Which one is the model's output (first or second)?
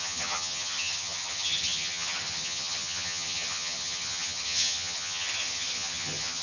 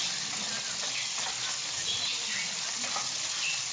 first